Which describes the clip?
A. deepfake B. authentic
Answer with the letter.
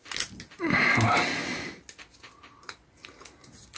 B